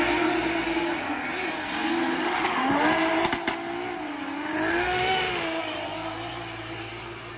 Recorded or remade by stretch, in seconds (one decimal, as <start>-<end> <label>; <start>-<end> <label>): 0.0-2.2 recorded; 2.2-2.7 remade; 2.7-4.7 recorded; 4.7-5.6 remade; 5.6-7.4 recorded